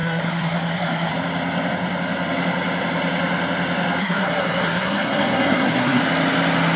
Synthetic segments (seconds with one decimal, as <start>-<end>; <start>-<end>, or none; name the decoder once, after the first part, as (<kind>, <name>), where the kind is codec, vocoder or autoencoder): 0.0-1.1 (codec, SNAC); 4.0-6.0